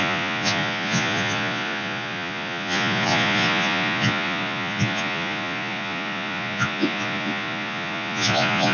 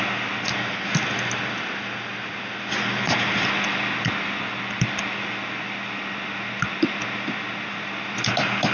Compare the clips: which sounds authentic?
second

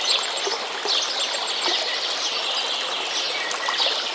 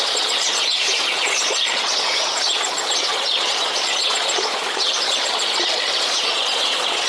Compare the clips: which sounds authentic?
first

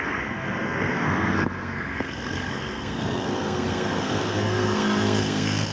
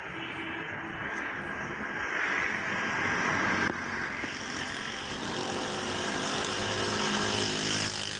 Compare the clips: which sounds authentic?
second